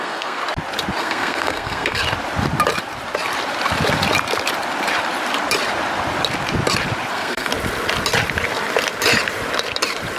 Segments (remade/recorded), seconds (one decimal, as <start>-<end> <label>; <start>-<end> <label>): 0.0-0.4 remade; 0.4-1.0 recorded; 1.0-2.0 remade; 2.0-7.1 recorded; 7.1-7.5 remade; 7.5-10.2 recorded